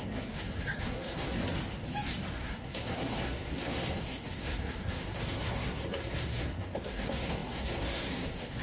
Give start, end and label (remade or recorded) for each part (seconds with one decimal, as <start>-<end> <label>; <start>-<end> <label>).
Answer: 0.0-1.4 remade; 1.4-2.3 recorded; 2.3-8.6 remade